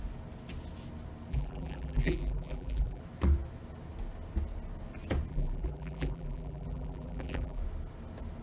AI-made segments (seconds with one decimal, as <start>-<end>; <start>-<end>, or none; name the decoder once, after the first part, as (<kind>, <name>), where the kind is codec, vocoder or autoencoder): 1.3-3.0 (vocoder, BigVGAN v2); 5.3-7.6